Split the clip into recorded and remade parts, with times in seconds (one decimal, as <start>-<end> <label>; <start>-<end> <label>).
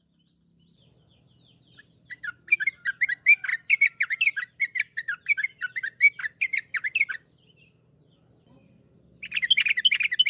0.0-10.3 recorded